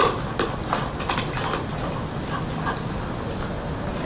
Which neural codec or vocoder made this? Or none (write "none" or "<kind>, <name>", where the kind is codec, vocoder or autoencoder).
none